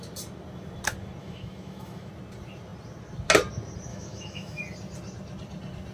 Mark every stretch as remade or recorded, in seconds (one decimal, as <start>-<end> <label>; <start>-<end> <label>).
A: 0.0-1.2 recorded; 1.2-2.1 remade; 2.1-3.9 recorded; 3.9-4.6 remade; 4.6-5.9 recorded